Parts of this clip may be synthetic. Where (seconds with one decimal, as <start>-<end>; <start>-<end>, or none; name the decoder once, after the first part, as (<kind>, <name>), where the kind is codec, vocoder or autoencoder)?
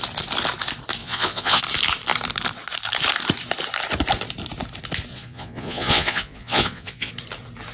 1.0-1.6 (vocoder, Vocos); 5.1-7.1